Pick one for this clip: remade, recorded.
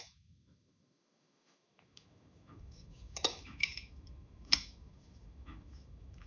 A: remade